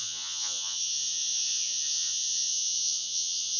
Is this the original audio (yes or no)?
no